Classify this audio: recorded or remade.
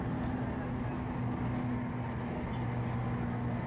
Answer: recorded